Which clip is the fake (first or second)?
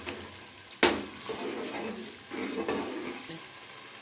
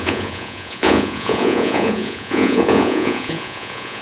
second